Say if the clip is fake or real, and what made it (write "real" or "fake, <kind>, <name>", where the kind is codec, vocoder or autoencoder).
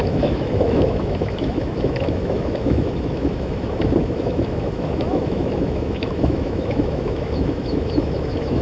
fake, autoencoder, DAC-VAE